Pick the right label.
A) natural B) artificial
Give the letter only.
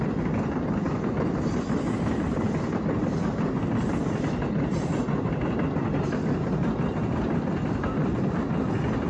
A